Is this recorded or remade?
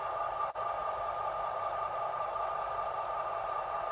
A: remade